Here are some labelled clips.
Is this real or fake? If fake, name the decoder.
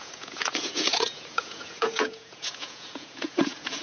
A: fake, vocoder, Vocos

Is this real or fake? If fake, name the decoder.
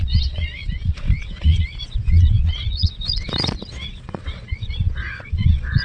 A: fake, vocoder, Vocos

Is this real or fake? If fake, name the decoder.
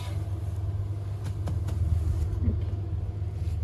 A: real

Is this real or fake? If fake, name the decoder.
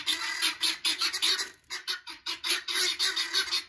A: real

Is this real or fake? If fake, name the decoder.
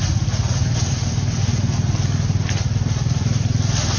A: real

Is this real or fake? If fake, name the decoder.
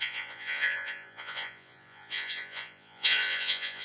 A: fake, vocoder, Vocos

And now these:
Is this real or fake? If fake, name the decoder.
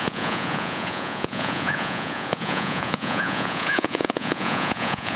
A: fake, vocoder, Vocos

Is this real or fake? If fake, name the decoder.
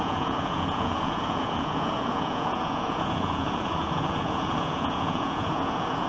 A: fake, vocoder, Vocos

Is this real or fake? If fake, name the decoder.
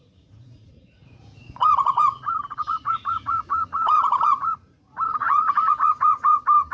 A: fake, vocoder, Vocos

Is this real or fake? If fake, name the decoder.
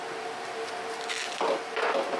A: real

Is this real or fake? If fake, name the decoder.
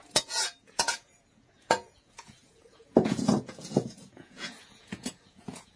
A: fake, vocoder, Vocos